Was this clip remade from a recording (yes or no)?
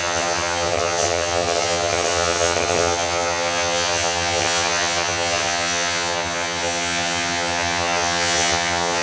yes